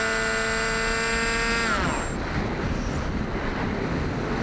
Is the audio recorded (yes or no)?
yes